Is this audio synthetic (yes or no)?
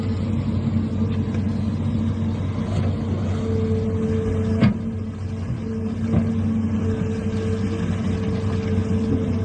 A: no